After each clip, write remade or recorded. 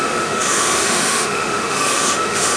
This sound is remade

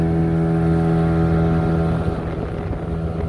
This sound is recorded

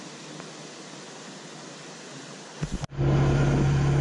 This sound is recorded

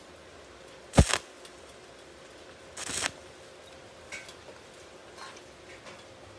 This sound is recorded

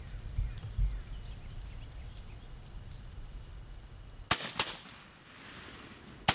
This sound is recorded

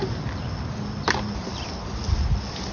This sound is recorded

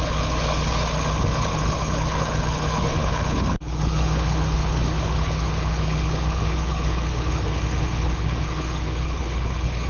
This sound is remade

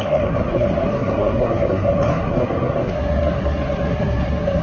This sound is remade